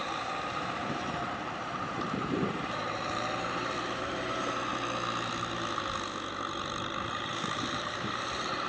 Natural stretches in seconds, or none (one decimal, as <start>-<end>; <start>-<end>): 4.7-7.1